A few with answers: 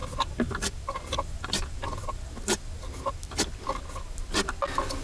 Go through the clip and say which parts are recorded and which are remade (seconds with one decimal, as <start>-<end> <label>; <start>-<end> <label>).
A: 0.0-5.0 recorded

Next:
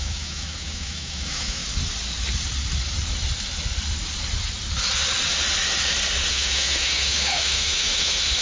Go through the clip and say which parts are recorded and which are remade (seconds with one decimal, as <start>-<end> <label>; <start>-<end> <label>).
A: 0.0-1.6 remade; 1.6-6.3 recorded; 6.3-8.4 remade

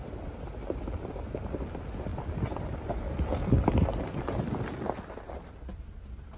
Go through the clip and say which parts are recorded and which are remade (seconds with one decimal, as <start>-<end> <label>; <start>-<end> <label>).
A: 0.0-6.4 recorded

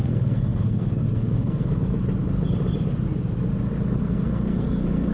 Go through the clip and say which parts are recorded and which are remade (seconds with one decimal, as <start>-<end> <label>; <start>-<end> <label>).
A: 0.0-2.0 remade; 2.0-4.0 recorded; 4.0-5.1 remade

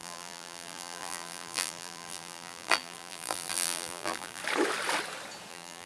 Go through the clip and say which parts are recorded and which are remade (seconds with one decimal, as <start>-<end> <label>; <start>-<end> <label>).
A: 0.0-4.4 remade; 4.4-5.5 recorded; 5.5-5.9 remade

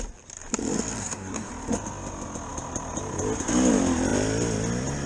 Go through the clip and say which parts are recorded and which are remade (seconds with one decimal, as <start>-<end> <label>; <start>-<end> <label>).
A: 0.0-1.0 recorded; 1.0-1.5 remade; 1.5-5.1 recorded